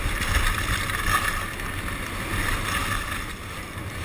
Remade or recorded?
recorded